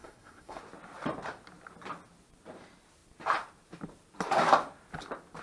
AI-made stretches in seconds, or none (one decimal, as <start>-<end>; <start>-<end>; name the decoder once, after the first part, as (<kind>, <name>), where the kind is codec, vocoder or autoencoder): 0.0-0.6 (codec, SNAC)